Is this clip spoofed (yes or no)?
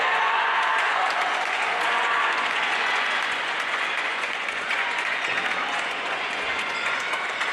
yes